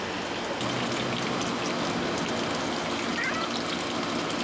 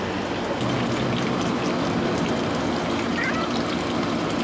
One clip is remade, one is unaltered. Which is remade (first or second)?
second